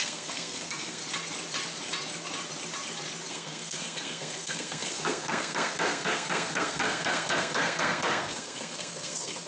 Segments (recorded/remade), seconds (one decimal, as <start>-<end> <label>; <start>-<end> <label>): 0.0-1.0 remade; 1.0-3.3 recorded; 3.3-9.5 remade